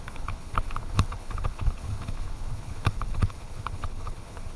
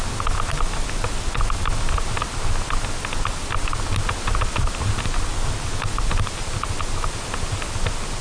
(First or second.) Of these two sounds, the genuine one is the second